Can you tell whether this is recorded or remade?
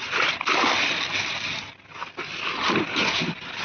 recorded